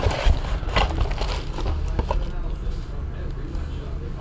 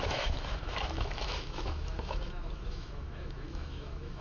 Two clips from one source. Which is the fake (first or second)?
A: second